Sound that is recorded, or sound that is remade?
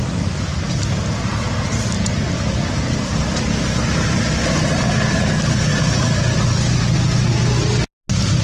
recorded